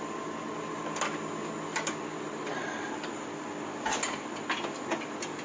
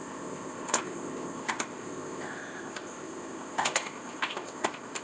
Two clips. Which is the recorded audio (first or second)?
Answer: first